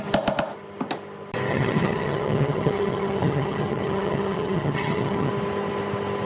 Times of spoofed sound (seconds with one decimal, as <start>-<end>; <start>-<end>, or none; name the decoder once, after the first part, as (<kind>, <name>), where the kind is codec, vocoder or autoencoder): 1.5-5.3 (vocoder, HiFi-GAN)